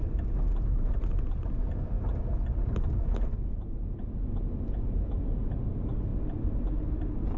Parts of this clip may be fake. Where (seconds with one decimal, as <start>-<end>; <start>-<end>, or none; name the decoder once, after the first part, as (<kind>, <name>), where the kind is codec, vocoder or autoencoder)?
none